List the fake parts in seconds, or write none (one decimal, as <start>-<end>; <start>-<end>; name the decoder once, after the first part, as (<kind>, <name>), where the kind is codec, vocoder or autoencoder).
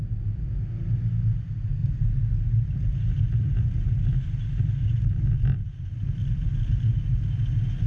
none